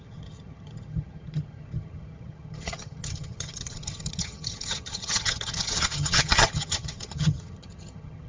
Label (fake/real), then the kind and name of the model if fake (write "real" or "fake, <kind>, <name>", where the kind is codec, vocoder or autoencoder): fake, vocoder, HiFi-GAN